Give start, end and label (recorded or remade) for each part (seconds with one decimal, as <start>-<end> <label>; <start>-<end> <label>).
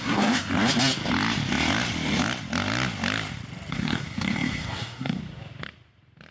0.0-0.5 remade; 0.5-3.7 recorded; 3.7-5.2 remade; 5.2-6.3 recorded